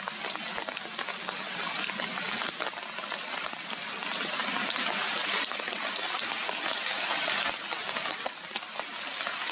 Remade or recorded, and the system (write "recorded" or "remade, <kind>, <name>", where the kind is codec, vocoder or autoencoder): recorded